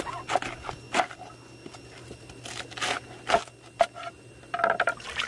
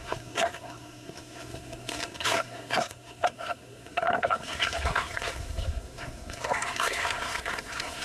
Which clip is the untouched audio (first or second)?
first